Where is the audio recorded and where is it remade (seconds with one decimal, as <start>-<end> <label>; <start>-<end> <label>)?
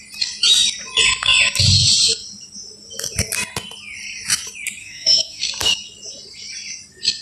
0.0-4.8 recorded; 4.8-5.4 remade; 5.4-7.2 recorded